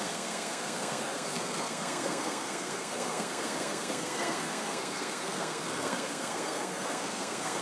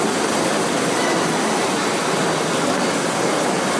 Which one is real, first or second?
second